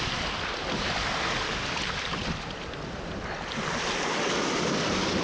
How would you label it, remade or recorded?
recorded